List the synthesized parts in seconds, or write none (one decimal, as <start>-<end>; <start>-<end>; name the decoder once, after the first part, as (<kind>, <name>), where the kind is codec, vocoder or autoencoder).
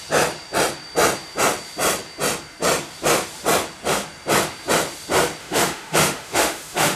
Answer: 5.4-7.0 (autoencoder, DAC-VAE)